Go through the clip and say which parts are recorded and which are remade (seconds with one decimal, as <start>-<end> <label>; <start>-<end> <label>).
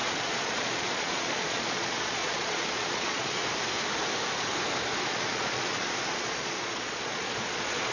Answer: 0.0-3.4 remade; 3.4-5.1 recorded; 5.1-7.9 remade